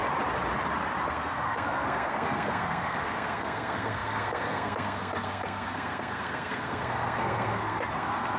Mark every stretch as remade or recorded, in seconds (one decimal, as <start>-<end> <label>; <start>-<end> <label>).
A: 0.0-1.1 recorded; 1.1-8.4 remade